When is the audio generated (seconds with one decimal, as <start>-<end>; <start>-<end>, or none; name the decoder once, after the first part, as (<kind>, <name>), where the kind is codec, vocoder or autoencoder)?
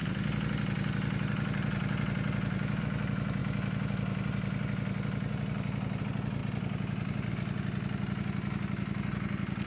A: none